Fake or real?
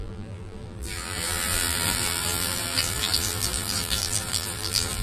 fake